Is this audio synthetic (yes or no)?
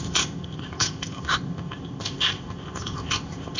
yes